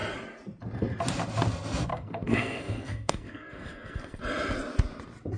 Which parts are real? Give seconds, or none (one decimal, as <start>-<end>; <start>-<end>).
0.0-1.9; 4.2-5.4